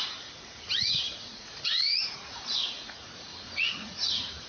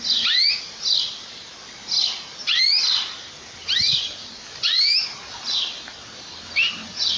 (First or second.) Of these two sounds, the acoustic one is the second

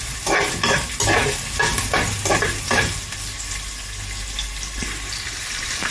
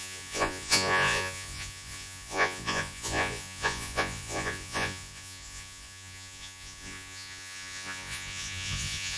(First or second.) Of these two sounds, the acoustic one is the first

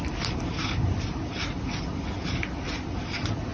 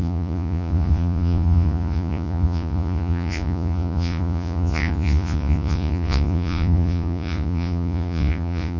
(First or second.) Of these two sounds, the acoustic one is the first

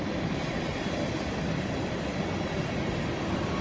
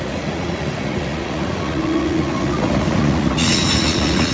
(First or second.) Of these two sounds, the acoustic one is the first